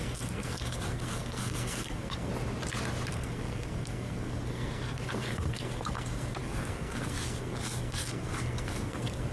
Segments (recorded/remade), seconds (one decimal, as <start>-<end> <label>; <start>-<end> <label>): 0.0-2.3 remade; 2.3-3.1 recorded; 3.1-9.3 remade